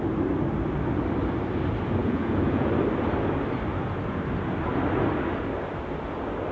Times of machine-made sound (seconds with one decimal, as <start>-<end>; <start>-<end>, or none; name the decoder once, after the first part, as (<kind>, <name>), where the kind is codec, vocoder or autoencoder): 2.0-2.7 (vocoder, Vocos)

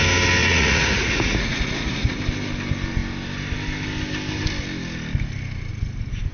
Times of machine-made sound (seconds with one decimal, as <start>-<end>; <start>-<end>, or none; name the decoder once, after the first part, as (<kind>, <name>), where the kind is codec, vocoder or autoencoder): 0.4-2.2 (vocoder, Vocos)

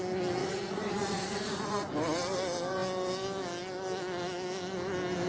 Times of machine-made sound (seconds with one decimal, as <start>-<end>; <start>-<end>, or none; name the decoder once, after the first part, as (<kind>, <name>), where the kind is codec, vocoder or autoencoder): 0.4-1.9 (vocoder, Vocos)

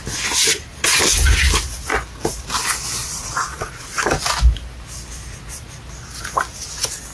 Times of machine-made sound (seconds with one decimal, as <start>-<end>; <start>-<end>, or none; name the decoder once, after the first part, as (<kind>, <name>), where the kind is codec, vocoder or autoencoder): 3.0-3.7 (vocoder, Vocos)

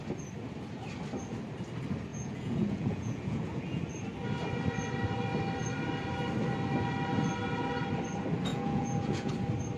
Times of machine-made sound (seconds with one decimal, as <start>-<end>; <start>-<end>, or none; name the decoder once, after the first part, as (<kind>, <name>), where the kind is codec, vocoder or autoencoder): 2.1-3.8 (vocoder, Vocos); 8.5-9.3